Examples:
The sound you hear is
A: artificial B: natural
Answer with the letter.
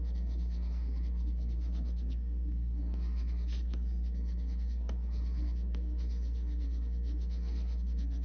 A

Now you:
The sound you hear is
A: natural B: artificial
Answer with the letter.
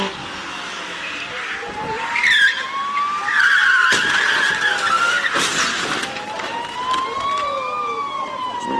A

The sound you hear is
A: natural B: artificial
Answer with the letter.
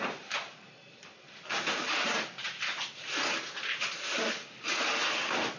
A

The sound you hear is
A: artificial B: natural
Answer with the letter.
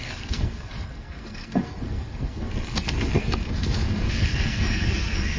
A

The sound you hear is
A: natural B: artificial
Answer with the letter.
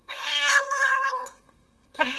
B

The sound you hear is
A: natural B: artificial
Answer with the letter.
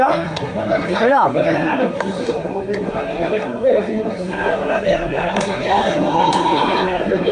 B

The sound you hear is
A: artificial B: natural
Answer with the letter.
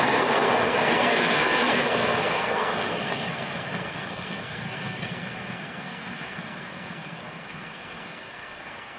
A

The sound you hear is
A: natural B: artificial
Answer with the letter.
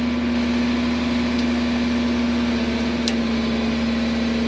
A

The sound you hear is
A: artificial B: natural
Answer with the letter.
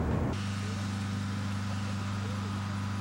B